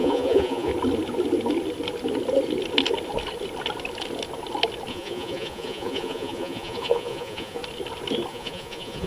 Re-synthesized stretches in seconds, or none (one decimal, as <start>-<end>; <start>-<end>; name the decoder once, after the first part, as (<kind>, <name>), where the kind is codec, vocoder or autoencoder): 0.0-0.7 (vocoder, Vocos); 4.9-7.6; 8.3-9.1